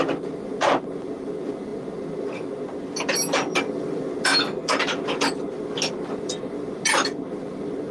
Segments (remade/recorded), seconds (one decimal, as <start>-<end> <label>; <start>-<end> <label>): 0.0-7.9 recorded

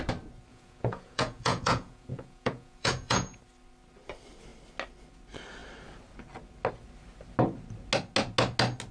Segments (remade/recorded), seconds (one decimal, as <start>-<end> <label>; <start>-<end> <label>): 0.0-0.5 recorded; 0.5-3.4 remade; 3.4-8.9 recorded

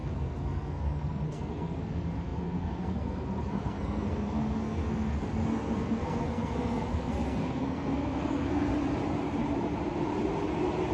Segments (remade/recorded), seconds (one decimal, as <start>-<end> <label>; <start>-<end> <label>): 0.0-8.7 remade; 8.7-10.9 recorded

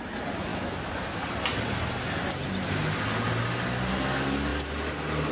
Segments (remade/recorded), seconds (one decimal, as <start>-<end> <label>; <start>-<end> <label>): 0.0-5.3 recorded